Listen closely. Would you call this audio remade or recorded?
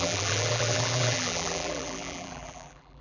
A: remade